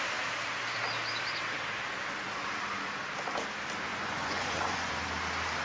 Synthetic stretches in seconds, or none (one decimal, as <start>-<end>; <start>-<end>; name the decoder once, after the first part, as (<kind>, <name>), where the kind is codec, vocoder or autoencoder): 3.9-4.9 (vocoder, Vocos)